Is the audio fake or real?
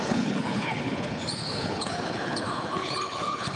fake